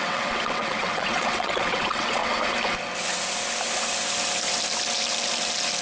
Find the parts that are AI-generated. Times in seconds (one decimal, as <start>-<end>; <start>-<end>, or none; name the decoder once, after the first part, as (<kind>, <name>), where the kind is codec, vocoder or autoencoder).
0.0-2.2 (vocoder, WaveNeXt)